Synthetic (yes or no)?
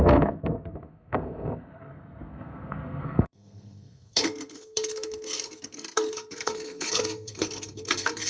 yes